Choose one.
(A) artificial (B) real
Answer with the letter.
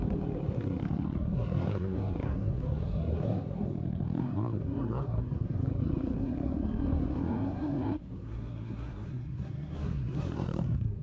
A